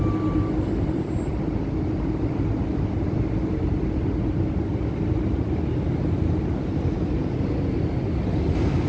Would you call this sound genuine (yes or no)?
yes